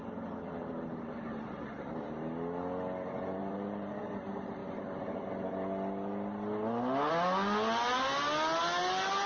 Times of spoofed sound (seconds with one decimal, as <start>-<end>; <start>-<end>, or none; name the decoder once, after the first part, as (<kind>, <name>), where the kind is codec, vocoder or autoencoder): 3.4-3.9 (vocoder, BigVGAN v2)